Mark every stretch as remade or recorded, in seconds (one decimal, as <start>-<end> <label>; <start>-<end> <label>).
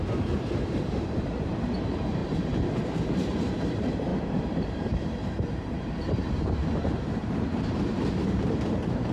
0.0-9.1 remade